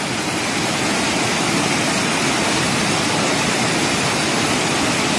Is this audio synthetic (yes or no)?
no